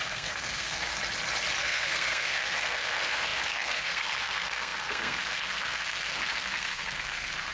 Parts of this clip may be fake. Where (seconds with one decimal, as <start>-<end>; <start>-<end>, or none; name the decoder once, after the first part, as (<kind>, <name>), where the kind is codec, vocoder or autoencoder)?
0.0-0.9 (codec, SNAC); 1.6-7.5